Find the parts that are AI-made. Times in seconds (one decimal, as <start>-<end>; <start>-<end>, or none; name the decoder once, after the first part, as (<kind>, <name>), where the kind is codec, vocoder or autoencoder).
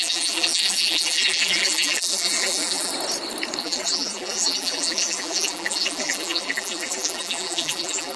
0.0-2.9 (vocoder, BigVGAN v2); 3.6-8.2